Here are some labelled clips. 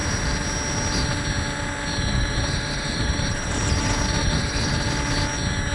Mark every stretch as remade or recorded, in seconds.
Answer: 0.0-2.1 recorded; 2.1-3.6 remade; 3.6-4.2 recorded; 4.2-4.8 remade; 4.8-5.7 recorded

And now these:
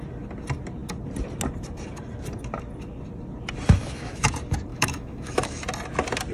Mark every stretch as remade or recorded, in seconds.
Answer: 0.0-3.8 recorded; 3.8-4.3 remade; 4.3-4.7 recorded; 4.7-5.6 remade; 5.6-6.3 recorded